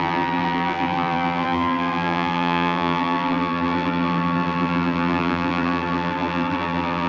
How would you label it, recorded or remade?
remade